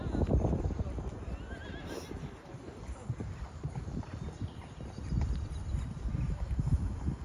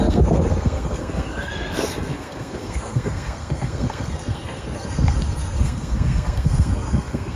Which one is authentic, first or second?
first